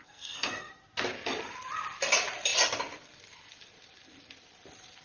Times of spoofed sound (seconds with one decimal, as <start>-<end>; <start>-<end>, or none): 0.0-0.7